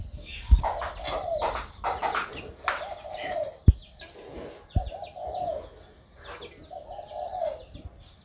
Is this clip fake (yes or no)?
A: no